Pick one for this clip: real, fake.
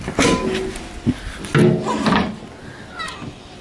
real